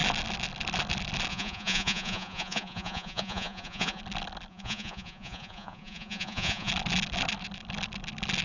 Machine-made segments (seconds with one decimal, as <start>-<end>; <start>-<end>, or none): 1.3-4.0; 4.5-6.7